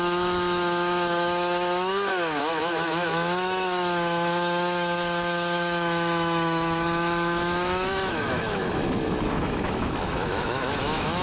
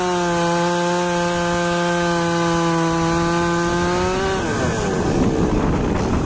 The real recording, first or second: second